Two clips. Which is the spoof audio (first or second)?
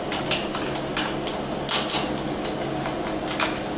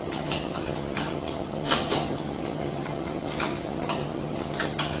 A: second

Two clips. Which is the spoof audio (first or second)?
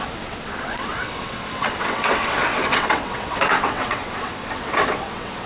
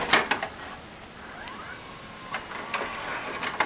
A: first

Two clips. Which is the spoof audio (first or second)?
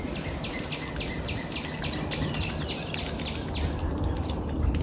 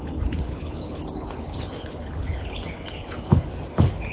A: second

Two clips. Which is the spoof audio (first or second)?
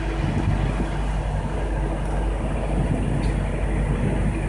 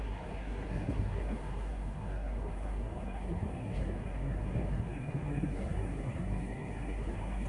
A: second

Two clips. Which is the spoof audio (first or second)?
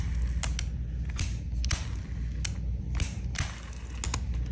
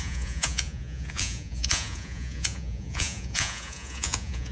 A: second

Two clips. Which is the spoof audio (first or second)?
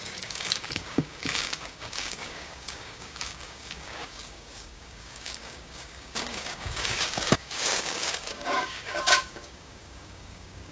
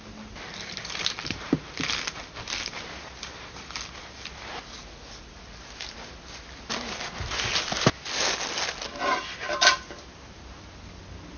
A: first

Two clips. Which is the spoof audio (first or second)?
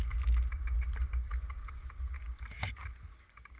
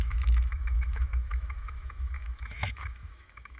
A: second